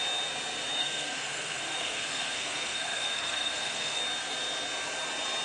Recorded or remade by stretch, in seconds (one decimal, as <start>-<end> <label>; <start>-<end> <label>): 0.0-0.8 recorded; 0.8-4.0 remade; 4.0-5.4 recorded